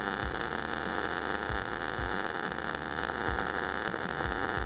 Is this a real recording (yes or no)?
yes